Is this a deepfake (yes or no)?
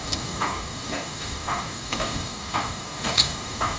yes